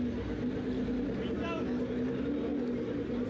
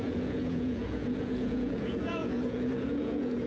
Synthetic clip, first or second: second